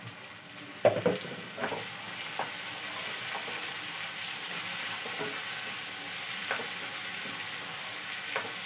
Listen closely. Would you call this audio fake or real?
real